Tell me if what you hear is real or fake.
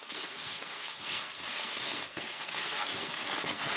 fake